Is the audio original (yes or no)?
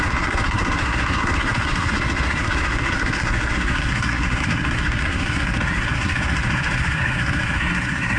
no